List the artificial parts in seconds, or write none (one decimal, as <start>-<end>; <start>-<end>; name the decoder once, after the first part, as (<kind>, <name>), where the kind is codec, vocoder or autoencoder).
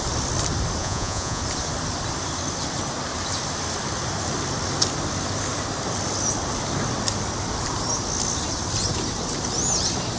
0.8-1.4 (vocoder, Vocos)